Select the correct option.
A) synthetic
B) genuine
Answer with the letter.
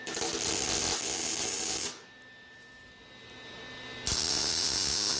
B